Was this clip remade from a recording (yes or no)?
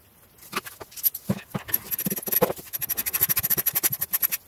no